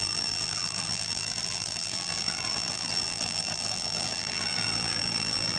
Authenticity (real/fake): fake